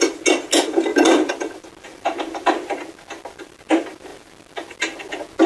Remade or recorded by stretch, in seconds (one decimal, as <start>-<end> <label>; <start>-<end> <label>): 0.0-5.5 recorded